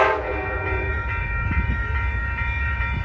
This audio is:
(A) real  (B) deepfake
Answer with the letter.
B